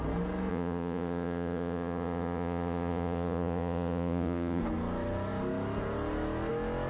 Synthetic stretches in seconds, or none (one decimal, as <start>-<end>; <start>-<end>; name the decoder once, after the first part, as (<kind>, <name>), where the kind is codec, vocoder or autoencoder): 0.5-4.6 (vocoder, Vocos)